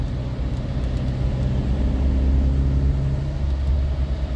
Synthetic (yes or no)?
no